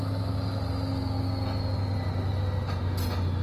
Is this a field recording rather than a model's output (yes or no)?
yes